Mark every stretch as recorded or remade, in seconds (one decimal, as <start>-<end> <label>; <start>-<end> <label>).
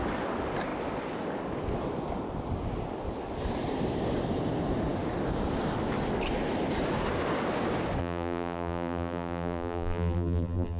0.0-8.0 recorded; 8.0-10.8 remade